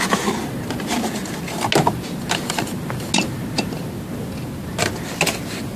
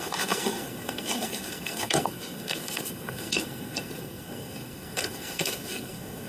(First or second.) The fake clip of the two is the second